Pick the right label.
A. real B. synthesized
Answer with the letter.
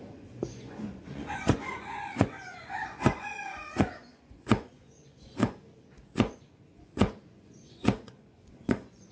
B